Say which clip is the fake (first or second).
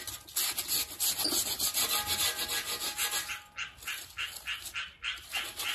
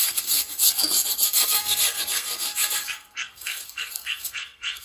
second